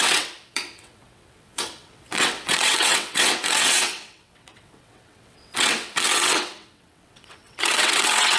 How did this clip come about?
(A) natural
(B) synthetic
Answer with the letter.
B